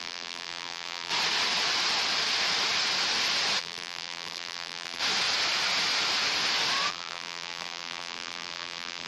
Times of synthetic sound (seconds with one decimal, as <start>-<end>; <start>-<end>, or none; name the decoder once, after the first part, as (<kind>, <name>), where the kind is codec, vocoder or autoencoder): 0.0-1.1 (vocoder, BigVGAN v2); 3.6-5.0; 6.9-9.1